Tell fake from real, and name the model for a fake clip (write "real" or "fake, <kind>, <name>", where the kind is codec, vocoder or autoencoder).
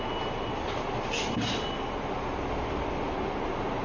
real